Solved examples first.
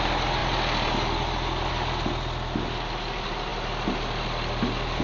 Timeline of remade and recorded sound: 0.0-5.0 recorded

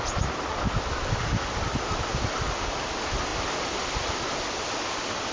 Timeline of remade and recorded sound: 0.0-5.3 recorded

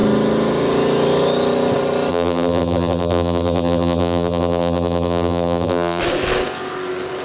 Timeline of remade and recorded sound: 0.0-2.1 recorded; 2.1-6.0 remade; 6.0-7.2 recorded

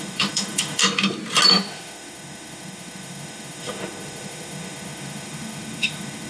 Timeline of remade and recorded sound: 0.0-0.8 remade; 0.8-1.5 recorded; 1.5-6.3 remade

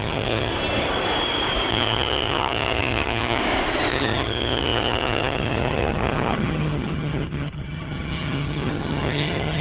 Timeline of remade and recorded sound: 0.0-0.5 remade; 0.5-1.7 recorded; 1.7-3.4 remade; 3.4-3.9 recorded; 3.9-9.6 remade

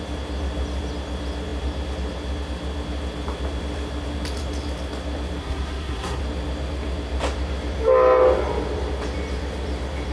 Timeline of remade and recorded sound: 0.0-5.4 recorded; 5.4-6.2 remade; 6.2-10.1 recorded